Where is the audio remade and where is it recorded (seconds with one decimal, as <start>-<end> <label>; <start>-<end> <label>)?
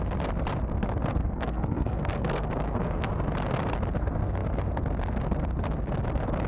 0.0-1.2 recorded; 1.2-3.1 remade; 3.1-6.5 recorded